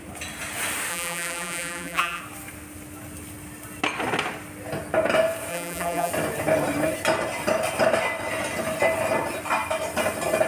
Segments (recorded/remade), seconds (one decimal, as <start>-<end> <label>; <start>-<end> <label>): 0.0-0.9 recorded; 0.9-2.2 remade; 2.2-5.5 recorded; 5.5-6.1 remade; 6.1-10.5 recorded